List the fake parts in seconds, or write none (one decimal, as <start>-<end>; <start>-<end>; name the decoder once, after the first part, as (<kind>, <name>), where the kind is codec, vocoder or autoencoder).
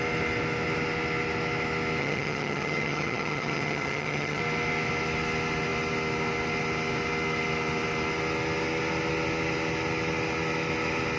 2.0-4.4 (vocoder, HiFi-GAN)